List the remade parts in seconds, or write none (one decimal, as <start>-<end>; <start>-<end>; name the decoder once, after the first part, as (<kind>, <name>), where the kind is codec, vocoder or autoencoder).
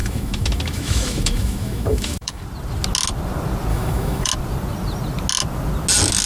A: 0.0-2.4 (autoencoder, DAC-VAE); 3.7-4.3